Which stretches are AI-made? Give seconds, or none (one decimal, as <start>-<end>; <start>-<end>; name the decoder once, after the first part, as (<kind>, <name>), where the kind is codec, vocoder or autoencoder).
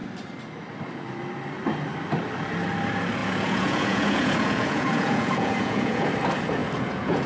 3.2-6.1 (vocoder, Vocos); 6.6-7.3